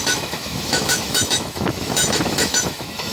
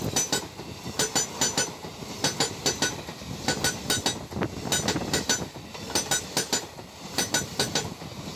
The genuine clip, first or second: second